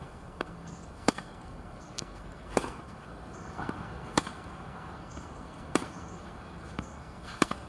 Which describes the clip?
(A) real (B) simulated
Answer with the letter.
B